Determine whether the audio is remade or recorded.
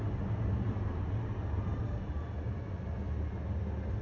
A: recorded